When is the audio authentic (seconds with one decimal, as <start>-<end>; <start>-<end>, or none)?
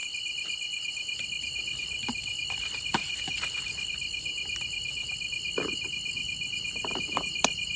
0.0-7.8